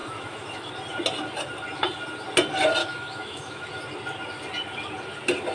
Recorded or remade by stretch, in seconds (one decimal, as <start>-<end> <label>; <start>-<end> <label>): 0.0-0.7 remade; 0.7-2.8 recorded; 2.8-3.7 remade; 3.7-5.5 recorded